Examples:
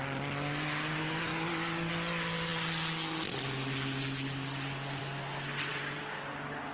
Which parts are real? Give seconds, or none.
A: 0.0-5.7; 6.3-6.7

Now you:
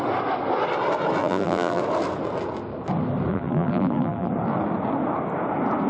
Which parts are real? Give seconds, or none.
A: 0.0-1.2; 1.8-3.3; 4.3-5.9

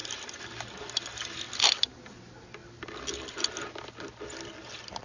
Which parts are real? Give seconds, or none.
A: 0.0-5.0